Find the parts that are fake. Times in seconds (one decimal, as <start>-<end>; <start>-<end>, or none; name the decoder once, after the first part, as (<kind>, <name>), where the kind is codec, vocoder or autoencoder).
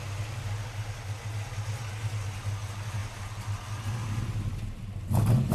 none